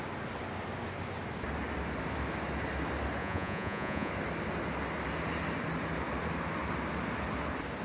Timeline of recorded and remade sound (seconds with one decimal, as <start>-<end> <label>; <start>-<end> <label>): 0.0-3.2 recorded; 3.2-4.1 remade; 4.1-7.8 recorded

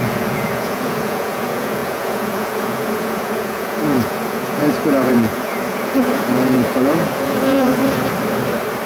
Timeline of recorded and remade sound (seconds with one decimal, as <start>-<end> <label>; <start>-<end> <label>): 0.0-7.8 remade; 7.8-8.9 recorded

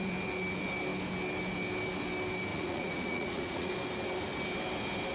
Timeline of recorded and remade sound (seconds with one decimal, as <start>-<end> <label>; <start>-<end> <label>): 0.0-2.5 recorded; 2.5-3.7 remade; 3.7-5.1 recorded